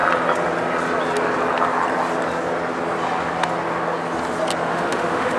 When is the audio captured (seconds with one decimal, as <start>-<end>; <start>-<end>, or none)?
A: 0.0-4.7